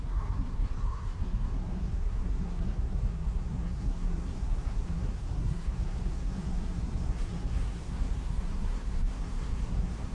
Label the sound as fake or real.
fake